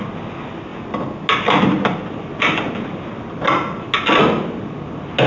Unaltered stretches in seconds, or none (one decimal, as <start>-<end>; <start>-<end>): 0.0-5.3